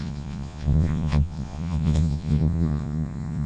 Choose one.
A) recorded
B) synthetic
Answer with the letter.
B